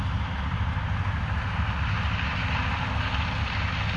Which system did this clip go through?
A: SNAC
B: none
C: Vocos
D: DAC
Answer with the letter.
B